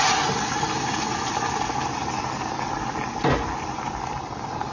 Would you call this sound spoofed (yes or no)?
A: no